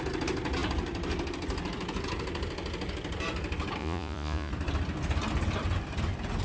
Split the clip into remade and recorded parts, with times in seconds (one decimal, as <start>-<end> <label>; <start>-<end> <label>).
0.0-3.8 recorded; 3.8-4.5 remade; 4.5-6.4 recorded